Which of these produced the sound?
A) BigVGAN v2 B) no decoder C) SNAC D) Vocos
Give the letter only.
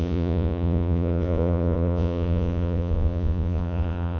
D